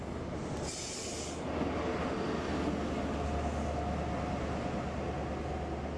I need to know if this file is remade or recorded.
recorded